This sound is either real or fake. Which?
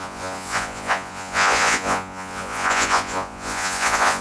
fake